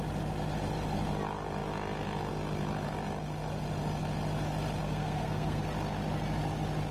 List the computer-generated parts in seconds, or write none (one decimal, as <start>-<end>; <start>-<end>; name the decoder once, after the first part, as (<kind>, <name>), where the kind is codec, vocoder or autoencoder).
4.8-5.6 (codec, SNAC)